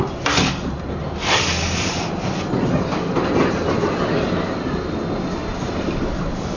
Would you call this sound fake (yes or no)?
no